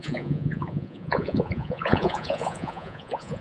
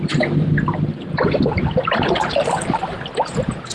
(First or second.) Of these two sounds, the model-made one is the first